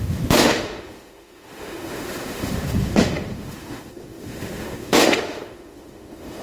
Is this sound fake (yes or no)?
yes